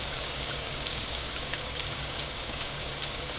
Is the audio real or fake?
fake